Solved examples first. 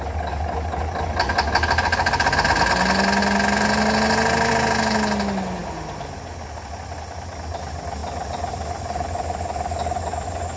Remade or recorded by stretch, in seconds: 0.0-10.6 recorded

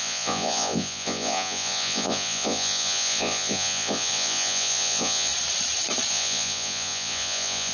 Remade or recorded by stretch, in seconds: 0.0-5.3 remade; 5.3-6.1 recorded; 6.1-7.7 remade

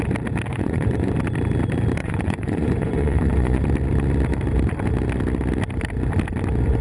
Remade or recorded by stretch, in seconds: 0.0-0.5 recorded; 0.5-1.1 remade; 1.1-2.0 recorded; 2.0-3.6 remade; 3.6-6.8 recorded

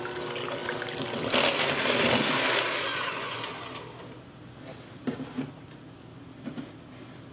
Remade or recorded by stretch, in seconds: 0.0-2.9 recorded; 2.9-3.5 remade; 3.5-7.3 recorded

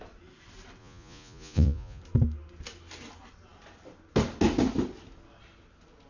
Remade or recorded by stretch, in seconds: 0.0-0.8 recorded; 0.8-2.0 remade; 2.0-6.1 recorded

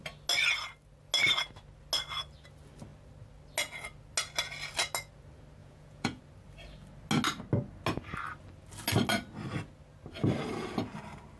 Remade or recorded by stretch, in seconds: 0.0-5.6 recorded; 5.6-6.2 remade; 6.2-11.4 recorded

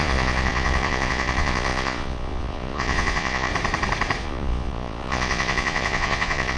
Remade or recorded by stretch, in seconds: 0.0-3.5 remade; 3.5-4.2 recorded; 4.2-6.6 remade